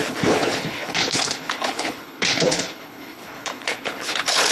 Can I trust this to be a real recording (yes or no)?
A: no